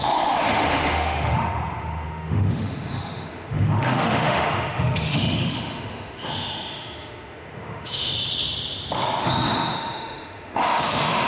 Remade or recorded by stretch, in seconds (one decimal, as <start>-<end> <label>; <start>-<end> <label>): 0.0-8.1 remade; 8.1-9.2 recorded; 9.2-11.3 remade